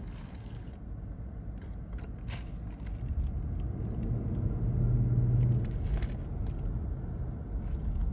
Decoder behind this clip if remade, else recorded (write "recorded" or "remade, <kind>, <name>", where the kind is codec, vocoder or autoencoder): recorded